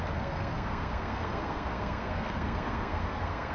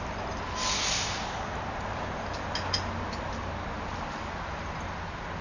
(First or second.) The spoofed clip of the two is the first